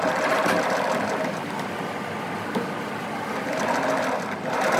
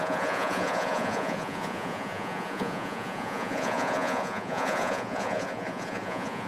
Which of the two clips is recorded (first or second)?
first